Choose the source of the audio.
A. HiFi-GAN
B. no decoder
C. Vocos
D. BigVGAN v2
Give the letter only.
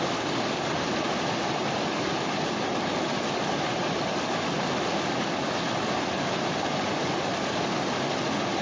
B